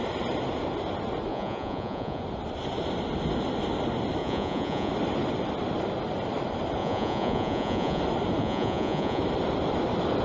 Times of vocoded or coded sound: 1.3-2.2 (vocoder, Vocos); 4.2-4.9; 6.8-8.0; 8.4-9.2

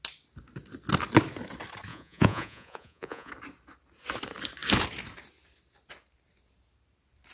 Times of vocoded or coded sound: 1.9-3.3 (vocoder, Vocos)

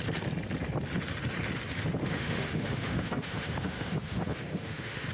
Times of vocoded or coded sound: 2.0-5.1 (autoencoder, DAC-VAE)

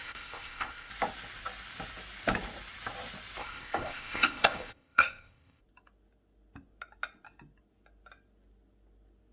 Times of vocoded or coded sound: 0.0-0.9 (codec, ZipCodec); 3.4-5.6

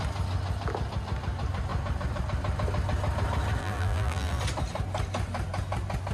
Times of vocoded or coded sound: 3.6-4.4 (vocoder, BigVGAN v2)

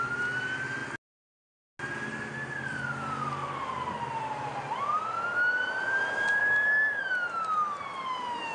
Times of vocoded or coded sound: 6.4-7.0 (codec, DAC)

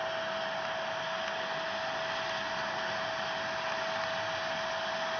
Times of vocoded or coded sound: none

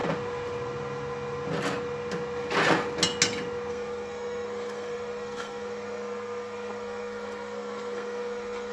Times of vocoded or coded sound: 3.7-8.7 (codec, SNAC)